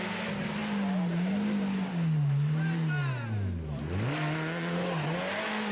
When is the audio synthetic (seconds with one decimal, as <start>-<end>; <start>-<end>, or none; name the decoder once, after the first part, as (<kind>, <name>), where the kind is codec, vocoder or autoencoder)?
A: none